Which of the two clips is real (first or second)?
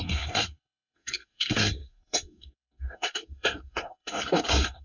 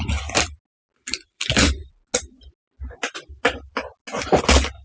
second